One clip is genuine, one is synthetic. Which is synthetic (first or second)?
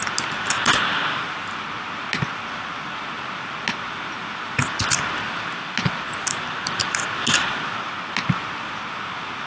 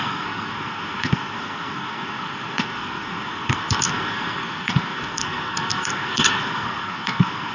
second